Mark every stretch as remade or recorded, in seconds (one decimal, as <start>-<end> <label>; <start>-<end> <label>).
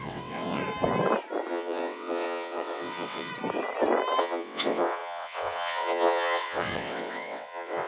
0.0-0.6 remade; 0.6-1.5 recorded; 1.5-3.3 remade; 3.3-4.2 recorded; 4.2-7.9 remade